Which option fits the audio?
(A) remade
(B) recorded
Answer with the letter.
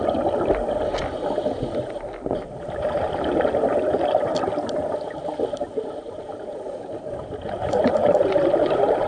B